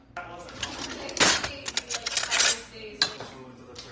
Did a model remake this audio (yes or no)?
no